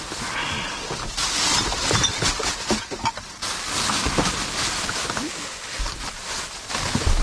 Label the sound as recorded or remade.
remade